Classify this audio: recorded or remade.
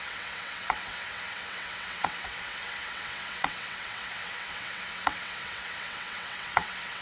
remade